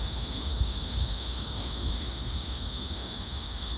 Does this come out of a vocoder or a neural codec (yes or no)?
yes